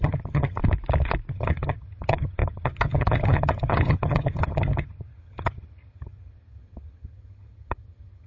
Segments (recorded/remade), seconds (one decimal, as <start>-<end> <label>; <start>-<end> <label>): 0.0-0.6 remade; 0.6-1.3 recorded; 1.3-8.3 remade